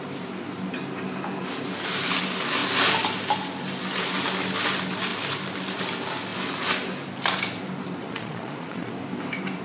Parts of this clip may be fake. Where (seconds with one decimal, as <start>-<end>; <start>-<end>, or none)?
8.0-8.9